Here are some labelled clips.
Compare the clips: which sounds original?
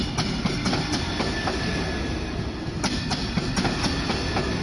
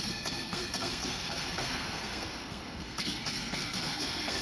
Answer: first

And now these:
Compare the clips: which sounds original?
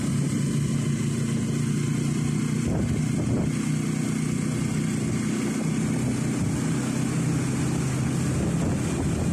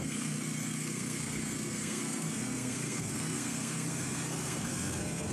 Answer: first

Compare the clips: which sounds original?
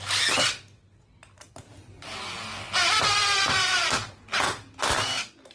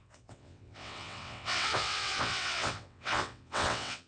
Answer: first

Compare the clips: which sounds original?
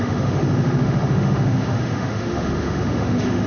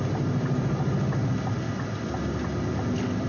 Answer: second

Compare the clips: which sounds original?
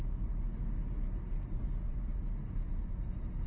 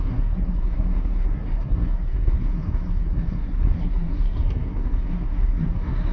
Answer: first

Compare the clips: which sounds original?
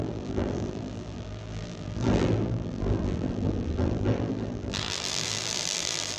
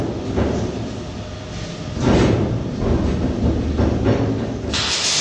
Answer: second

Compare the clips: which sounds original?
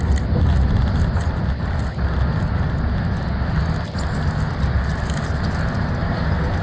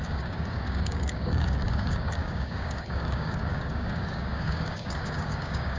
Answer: first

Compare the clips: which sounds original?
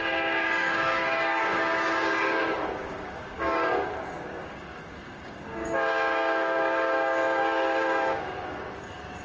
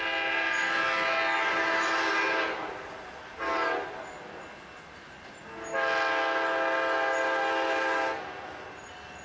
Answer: second